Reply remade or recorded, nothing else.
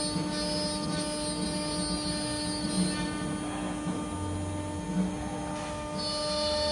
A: recorded